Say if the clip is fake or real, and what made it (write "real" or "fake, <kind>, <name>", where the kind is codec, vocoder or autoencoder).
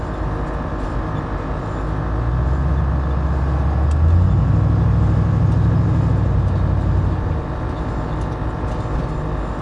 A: real